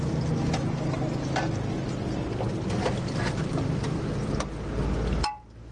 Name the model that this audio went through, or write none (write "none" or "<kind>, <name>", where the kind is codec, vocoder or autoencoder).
none